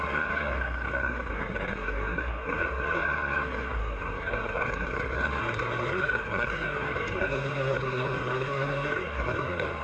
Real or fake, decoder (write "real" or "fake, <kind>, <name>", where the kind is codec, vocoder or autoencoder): fake, codec, SNAC